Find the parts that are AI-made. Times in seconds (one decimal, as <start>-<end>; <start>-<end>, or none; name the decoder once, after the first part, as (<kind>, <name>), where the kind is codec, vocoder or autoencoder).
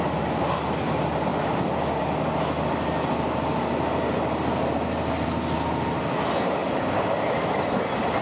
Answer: 6.6-7.7 (vocoder, BigVGAN v2)